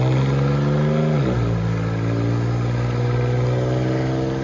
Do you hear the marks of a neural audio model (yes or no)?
no